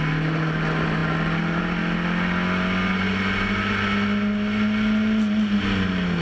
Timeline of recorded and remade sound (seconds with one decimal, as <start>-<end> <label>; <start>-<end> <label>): 0.0-6.2 recorded